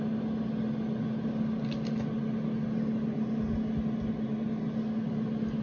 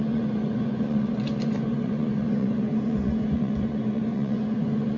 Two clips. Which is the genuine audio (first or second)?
first